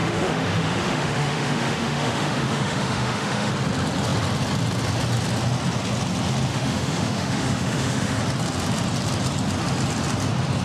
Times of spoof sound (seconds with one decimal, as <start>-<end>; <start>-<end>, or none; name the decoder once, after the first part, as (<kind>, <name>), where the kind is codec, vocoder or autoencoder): 0.0-3.5 (autoencoder, DAC-VAE); 6.5-8.2